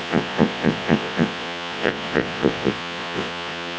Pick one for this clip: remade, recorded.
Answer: remade